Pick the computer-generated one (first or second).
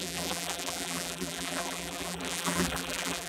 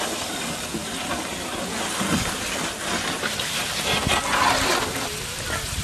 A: first